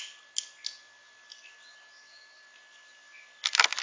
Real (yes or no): yes